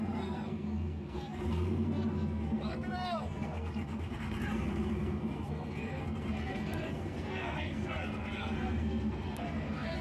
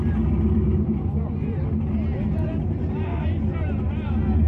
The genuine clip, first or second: second